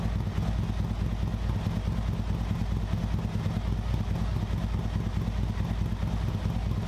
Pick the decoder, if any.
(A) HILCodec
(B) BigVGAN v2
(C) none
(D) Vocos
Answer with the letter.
C